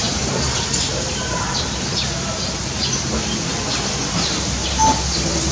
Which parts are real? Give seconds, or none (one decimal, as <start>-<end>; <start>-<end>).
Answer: 1.4-5.5